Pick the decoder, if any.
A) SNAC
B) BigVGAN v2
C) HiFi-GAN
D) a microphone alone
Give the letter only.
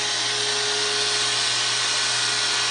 D